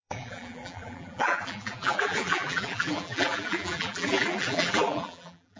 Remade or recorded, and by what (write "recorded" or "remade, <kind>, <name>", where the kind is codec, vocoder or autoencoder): remade, vocoder, BigVGAN v2